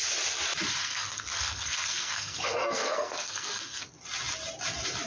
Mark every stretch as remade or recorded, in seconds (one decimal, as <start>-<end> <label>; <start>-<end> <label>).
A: 0.0-0.8 recorded; 0.8-3.9 remade; 3.9-5.1 recorded